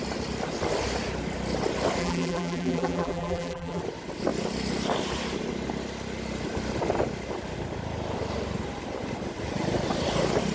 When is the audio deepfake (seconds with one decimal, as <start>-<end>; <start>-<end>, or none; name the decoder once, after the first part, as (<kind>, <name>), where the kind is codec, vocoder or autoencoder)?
2.0-3.8 (vocoder, BigVGAN v2)